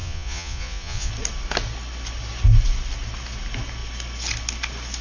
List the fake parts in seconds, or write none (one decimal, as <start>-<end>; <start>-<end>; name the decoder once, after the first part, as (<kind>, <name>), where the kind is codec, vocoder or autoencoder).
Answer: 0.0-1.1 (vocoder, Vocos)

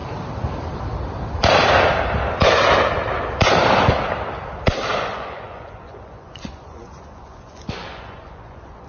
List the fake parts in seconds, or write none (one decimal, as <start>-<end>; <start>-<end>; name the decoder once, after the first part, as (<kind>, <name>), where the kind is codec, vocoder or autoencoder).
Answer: 4.9-8.9 (vocoder, Vocos)

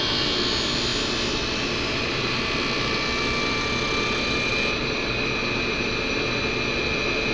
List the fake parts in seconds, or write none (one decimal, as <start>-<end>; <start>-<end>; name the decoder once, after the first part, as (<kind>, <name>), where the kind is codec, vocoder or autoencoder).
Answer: none

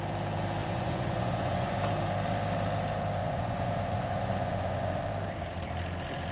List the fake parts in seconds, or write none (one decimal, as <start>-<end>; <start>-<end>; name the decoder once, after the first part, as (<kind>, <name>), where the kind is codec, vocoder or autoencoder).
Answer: 0.6-1.8 (vocoder, Vocos); 3.2-5.0

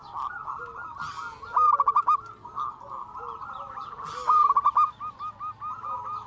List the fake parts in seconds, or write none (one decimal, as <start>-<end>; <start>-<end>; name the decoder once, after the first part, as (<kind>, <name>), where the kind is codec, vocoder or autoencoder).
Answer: none

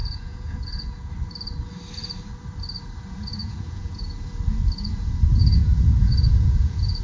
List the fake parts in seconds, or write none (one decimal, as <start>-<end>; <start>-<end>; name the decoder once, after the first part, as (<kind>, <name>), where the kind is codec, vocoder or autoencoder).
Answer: 0.0-1.1 (vocoder, Vocos); 3.4-4.2; 5.4-7.0

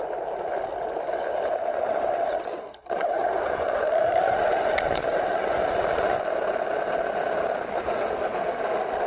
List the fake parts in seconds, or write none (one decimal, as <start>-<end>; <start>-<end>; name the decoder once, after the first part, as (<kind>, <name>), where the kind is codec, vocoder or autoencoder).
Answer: 1.7-6.3 (vocoder, Vocos)